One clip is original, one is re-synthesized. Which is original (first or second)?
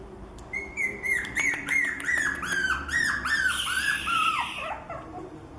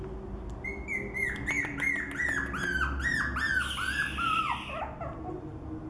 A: second